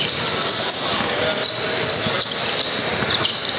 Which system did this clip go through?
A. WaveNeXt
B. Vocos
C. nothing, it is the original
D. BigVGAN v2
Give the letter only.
C